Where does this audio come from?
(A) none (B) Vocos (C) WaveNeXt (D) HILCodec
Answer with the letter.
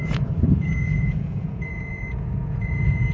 B